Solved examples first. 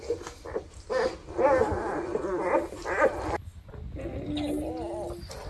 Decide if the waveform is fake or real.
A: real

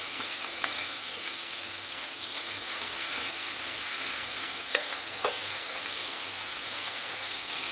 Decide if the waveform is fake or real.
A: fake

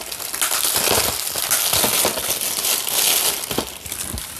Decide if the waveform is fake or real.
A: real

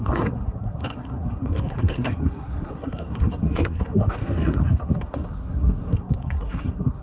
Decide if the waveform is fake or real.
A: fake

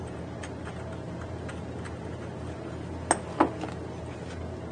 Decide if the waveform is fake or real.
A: real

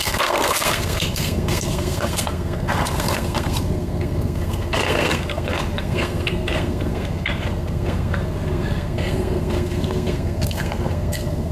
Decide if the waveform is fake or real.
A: fake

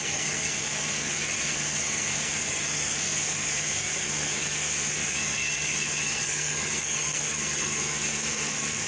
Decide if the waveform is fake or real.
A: fake